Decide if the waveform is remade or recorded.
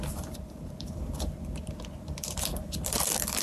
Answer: remade